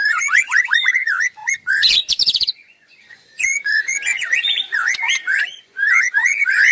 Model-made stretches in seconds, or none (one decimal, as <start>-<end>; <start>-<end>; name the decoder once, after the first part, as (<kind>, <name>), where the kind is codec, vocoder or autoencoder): 0.0-6.7 (vocoder, Vocos)